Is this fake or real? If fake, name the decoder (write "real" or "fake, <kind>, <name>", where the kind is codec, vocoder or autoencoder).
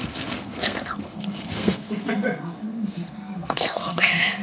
fake, codec, SNAC